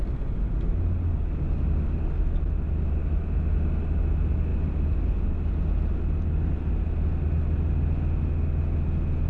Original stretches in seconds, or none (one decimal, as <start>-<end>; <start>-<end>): 0.0-9.3